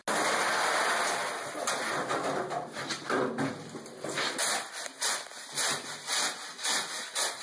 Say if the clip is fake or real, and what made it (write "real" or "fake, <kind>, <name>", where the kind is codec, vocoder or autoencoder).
real